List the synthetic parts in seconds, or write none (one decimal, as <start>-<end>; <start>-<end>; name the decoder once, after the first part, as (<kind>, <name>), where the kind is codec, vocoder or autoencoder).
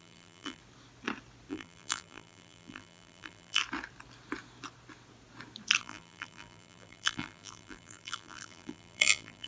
0.0-0.6 (vocoder, BigVGAN v2); 1.5-3.6; 5.8-9.5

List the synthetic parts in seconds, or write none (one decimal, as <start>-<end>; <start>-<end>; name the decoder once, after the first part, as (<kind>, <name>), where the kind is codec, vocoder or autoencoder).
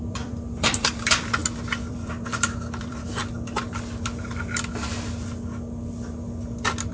0.0-1.4 (vocoder, BigVGAN v2); 1.9-3.2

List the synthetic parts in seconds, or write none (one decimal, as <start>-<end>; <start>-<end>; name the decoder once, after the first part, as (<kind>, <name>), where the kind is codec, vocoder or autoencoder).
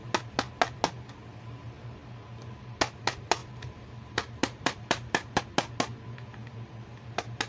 3.4-5.4 (vocoder, BigVGAN v2)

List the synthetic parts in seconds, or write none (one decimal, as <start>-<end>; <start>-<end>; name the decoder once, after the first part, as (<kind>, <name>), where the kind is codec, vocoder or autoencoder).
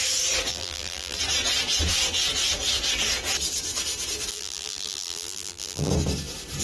0.5-1.2 (vocoder, BigVGAN v2); 4.3-5.9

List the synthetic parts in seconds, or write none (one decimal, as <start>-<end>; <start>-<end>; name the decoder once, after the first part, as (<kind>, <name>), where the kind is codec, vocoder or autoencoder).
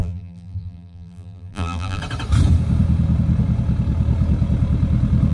0.0-2.0 (vocoder, BigVGAN v2)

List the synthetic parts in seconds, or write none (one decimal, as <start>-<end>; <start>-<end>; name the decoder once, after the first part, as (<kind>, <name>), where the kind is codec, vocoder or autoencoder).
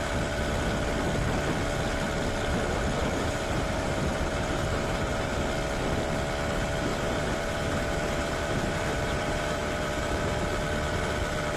3.0-5.4 (vocoder, BigVGAN v2); 6.9-10.1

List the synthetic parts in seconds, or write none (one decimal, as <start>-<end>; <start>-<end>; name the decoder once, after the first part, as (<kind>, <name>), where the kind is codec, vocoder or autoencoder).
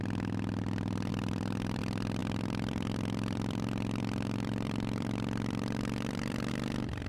1.1-1.8 (vocoder, BigVGAN v2); 2.2-6.5